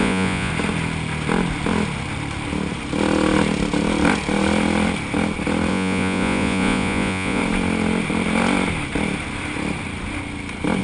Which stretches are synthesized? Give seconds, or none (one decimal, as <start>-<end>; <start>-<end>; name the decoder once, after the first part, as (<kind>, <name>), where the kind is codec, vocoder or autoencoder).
0.0-0.5 (vocoder, Vocos); 5.7-7.4